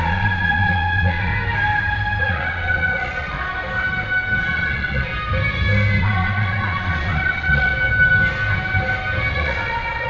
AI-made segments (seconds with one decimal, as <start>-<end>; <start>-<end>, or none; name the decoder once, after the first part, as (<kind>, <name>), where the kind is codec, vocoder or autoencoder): 0.0-1.3 (vocoder, Vocos); 2.2-3.5; 4.5-5.1; 6.0-7.7; 9.3-10.1